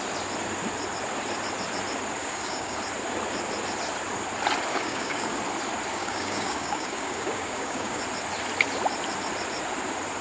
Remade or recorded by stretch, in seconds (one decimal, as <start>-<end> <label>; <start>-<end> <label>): 0.0-2.2 recorded; 2.2-2.8 remade; 2.8-4.7 recorded; 4.7-5.4 remade; 5.4-5.9 recorded; 5.9-8.0 remade; 8.0-10.2 recorded